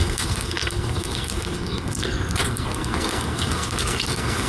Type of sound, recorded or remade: remade